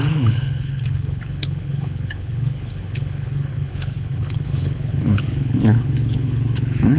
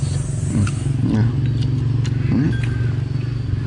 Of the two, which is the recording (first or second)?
second